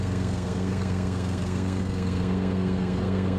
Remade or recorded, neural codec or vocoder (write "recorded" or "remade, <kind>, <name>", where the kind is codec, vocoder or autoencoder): remade, codec, SNAC